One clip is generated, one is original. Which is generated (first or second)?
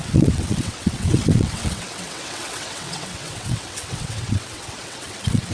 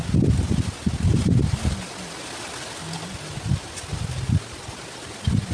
first